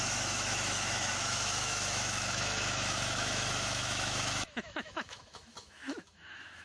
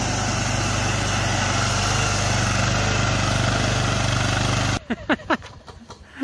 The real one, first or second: second